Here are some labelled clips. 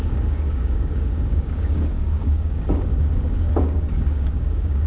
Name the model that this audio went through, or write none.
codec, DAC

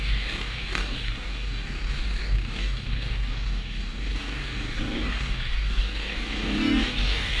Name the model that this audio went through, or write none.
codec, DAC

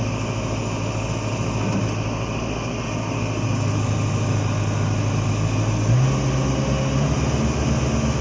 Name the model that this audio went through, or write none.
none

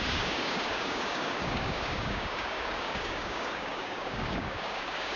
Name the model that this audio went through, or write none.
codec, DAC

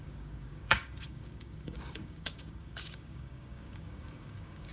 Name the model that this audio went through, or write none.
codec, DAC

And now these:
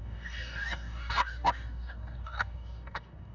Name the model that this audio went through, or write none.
codec, DAC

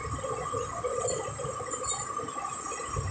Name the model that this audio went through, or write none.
none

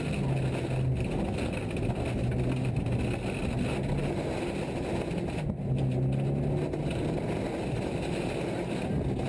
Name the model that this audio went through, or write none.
none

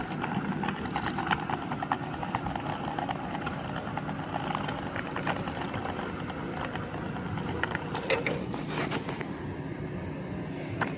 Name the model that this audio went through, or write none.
none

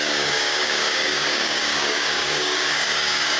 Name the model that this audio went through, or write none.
codec, DAC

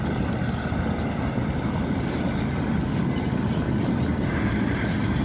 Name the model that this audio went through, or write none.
none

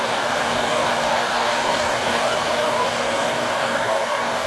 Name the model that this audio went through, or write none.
codec, DAC